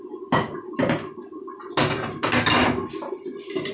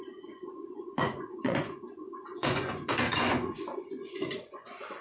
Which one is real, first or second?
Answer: first